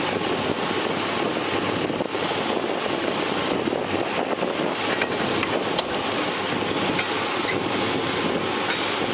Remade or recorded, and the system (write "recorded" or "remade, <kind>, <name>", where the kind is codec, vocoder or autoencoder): recorded